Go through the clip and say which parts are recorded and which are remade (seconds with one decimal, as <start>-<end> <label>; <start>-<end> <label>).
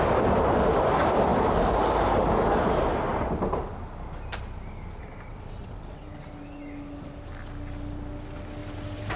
0.0-5.3 recorded; 5.3-6.0 remade; 6.0-9.2 recorded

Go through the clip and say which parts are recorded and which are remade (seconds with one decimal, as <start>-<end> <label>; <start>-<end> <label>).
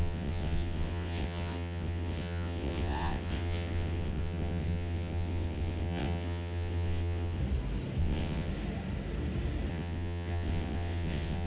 0.0-7.4 remade; 7.4-8.0 recorded; 8.0-8.5 remade; 8.5-9.7 recorded; 9.7-11.5 remade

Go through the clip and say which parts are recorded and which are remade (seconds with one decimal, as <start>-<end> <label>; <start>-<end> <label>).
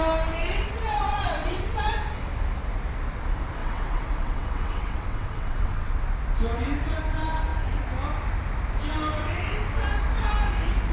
0.0-0.4 recorded; 0.4-1.9 remade; 1.9-3.6 recorded; 3.6-5.9 remade; 5.9-10.9 recorded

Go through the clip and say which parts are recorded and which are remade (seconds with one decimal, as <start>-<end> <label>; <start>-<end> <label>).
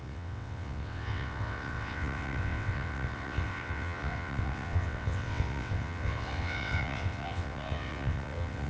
0.0-8.7 remade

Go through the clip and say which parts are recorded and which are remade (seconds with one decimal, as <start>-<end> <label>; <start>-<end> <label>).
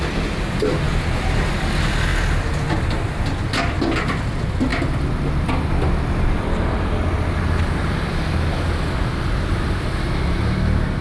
0.0-11.0 recorded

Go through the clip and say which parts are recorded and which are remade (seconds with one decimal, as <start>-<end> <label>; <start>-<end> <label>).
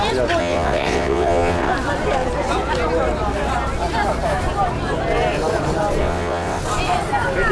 0.0-0.4 recorded; 0.4-1.7 remade; 1.7-6.0 recorded; 6.0-6.6 remade; 6.6-7.5 recorded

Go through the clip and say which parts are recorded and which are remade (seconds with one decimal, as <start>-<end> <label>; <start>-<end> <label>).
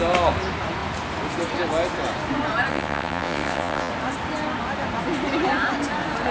0.0-2.7 recorded; 2.7-3.9 remade; 3.9-6.3 recorded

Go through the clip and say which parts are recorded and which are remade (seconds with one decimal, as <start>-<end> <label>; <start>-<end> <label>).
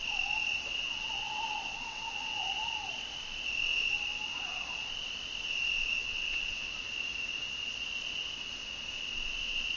0.0-0.7 recorded; 0.7-2.5 remade; 2.5-6.0 recorded; 6.0-6.7 remade; 6.7-9.8 recorded